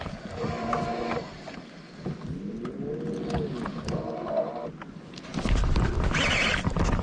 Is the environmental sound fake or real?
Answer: real